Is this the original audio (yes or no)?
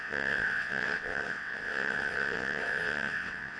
no